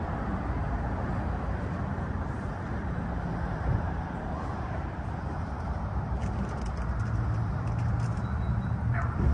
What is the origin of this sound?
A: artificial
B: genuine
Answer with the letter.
A